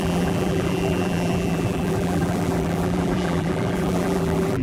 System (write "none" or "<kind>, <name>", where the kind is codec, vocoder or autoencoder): vocoder, BigVGAN v2